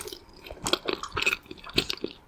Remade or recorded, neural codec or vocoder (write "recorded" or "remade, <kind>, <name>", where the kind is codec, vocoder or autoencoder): recorded